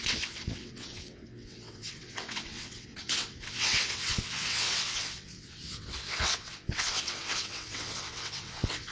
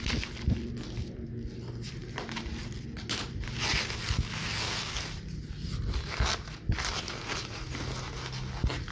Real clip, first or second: second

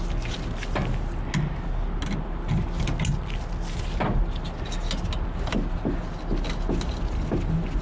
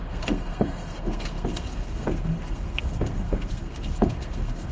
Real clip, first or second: first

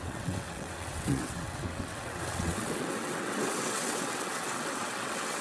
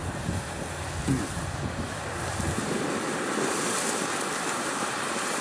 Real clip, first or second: second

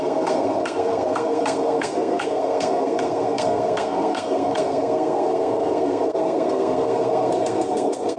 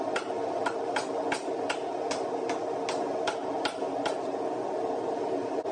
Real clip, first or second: second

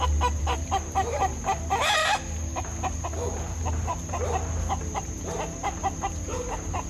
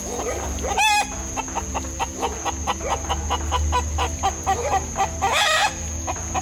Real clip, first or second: second